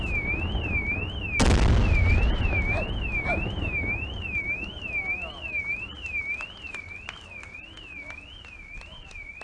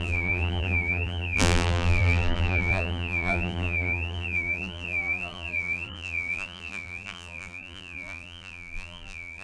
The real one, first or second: first